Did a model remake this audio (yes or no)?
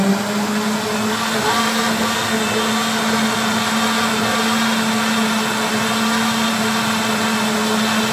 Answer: no